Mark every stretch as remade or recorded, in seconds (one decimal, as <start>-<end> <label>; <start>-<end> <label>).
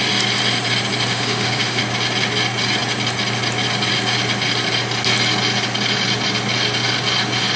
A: 0.0-1.1 recorded; 1.1-1.8 remade; 1.8-7.6 recorded